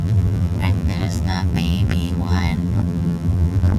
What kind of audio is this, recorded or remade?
remade